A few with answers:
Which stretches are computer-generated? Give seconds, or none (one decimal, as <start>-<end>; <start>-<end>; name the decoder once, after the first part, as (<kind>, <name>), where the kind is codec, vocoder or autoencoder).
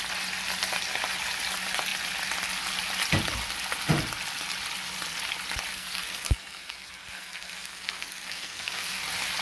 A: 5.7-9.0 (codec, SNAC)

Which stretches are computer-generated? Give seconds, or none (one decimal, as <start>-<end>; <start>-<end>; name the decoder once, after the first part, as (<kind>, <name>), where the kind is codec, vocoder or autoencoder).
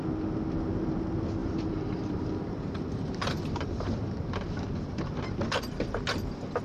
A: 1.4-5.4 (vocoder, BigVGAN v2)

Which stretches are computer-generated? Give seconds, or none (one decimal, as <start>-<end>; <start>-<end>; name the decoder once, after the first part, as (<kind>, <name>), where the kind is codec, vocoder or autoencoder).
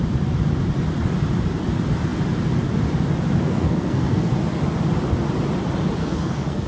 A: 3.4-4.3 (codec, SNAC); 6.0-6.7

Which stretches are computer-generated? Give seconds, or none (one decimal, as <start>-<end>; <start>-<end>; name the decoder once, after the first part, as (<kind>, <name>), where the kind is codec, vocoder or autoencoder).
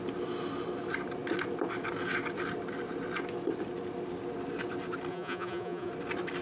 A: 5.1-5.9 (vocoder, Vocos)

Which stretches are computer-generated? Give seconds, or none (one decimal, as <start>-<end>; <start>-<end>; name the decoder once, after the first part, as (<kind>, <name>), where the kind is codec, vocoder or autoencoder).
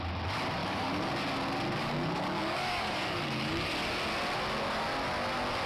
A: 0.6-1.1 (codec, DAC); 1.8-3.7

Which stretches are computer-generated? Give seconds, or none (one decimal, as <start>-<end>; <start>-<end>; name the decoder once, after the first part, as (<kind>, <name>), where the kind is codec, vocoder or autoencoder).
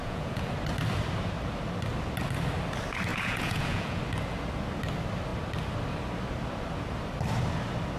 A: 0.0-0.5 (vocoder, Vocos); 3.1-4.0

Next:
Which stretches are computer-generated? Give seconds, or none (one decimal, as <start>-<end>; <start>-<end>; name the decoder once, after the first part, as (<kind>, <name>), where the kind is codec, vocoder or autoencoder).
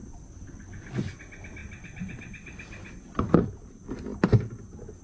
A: none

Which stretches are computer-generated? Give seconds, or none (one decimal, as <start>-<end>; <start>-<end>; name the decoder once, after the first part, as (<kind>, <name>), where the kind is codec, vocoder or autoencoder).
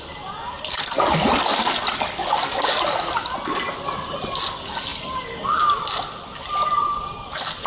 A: none